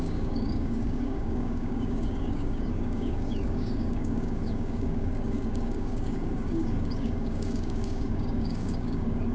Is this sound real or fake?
fake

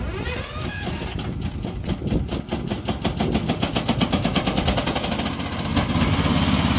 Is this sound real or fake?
real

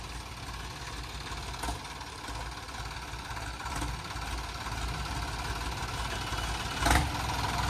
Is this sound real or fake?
real